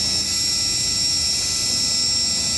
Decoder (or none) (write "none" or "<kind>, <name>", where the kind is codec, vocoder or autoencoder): none